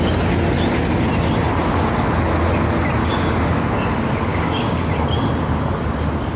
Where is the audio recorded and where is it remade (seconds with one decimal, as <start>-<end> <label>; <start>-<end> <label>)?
0.0-3.0 recorded; 3.0-3.7 remade; 3.7-4.3 recorded; 4.3-4.9 remade; 4.9-6.4 recorded